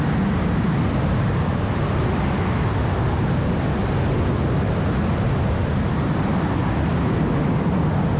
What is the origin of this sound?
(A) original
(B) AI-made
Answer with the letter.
A